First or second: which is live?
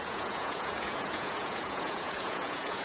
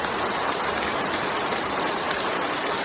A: second